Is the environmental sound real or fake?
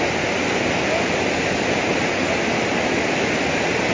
real